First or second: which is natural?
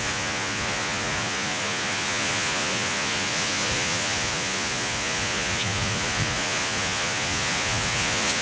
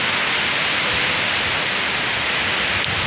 second